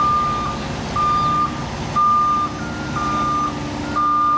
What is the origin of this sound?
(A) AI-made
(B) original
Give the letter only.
B